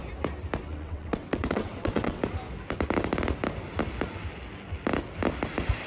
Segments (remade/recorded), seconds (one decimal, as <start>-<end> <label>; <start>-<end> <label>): 0.0-0.6 recorded; 0.6-2.2 remade; 2.2-5.9 recorded